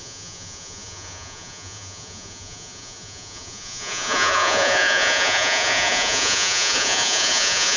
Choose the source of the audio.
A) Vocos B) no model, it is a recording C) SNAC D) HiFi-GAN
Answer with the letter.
A